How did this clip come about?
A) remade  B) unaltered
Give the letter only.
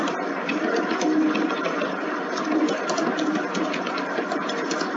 B